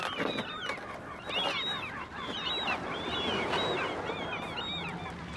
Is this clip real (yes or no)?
yes